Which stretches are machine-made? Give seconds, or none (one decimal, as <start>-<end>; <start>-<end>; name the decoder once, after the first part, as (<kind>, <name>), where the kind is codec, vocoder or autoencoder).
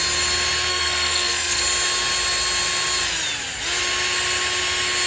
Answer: 0.7-1.6 (codec, SNAC)